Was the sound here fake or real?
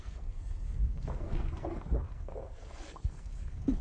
fake